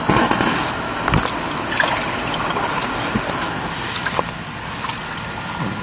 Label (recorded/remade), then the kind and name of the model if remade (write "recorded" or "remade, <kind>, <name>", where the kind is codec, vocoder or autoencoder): recorded